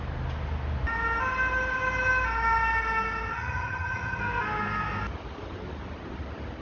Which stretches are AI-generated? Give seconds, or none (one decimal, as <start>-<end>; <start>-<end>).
3.3-4.2